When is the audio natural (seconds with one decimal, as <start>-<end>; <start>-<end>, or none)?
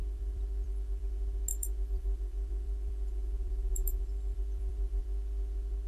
1.0-1.5; 5.0-5.9